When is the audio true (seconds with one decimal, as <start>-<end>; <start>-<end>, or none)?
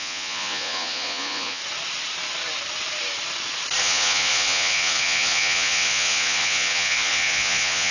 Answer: 1.6-3.8